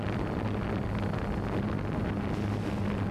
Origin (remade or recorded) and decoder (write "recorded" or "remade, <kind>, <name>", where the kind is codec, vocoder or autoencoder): recorded